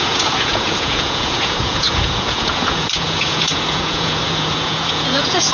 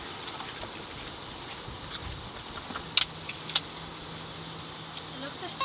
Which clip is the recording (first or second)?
second